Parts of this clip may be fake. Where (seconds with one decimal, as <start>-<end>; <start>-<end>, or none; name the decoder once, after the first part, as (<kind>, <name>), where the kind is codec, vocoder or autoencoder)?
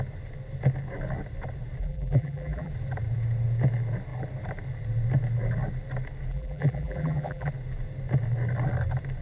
1.8-2.7 (vocoder, BigVGAN v2); 6.3-7.5